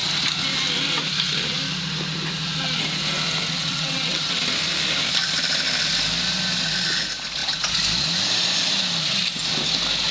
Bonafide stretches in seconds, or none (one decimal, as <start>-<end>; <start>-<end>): 0.0-3.7; 4.4-10.1